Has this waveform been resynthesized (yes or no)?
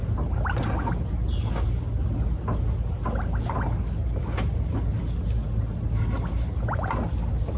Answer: no